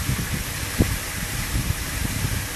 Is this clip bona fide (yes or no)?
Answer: yes